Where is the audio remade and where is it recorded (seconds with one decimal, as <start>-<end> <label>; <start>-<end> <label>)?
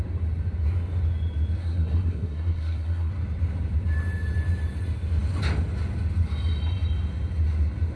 0.0-1.6 recorded; 1.6-3.1 remade; 3.1-8.0 recorded